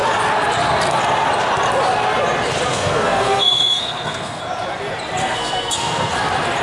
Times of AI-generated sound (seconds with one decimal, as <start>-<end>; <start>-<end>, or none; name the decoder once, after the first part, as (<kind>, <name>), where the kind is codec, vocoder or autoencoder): 2.7-4.4 (codec, SNAC); 5.2-6.1